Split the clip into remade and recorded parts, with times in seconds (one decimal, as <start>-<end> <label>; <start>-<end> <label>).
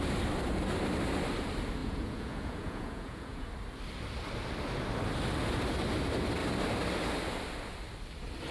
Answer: 0.0-1.8 recorded; 1.8-3.5 remade; 3.5-8.5 recorded